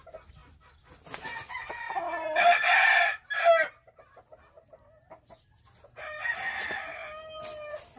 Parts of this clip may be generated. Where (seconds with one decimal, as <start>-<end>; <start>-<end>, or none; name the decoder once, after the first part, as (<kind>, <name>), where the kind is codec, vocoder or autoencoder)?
none